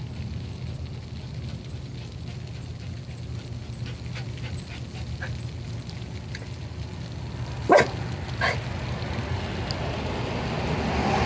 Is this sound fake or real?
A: real